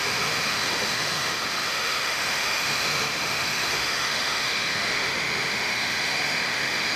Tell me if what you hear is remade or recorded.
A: remade